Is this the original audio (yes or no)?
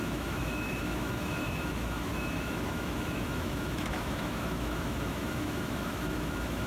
no